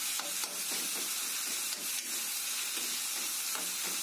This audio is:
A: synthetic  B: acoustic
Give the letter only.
B